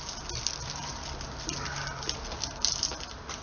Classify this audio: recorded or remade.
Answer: recorded